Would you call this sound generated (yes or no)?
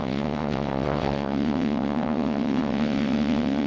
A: yes